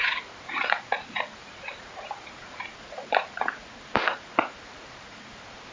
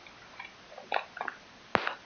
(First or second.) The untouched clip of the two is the second